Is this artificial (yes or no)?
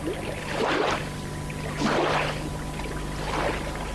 no